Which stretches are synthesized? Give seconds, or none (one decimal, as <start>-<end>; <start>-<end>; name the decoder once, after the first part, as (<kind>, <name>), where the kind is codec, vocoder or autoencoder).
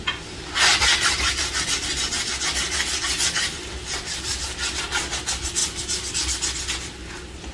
none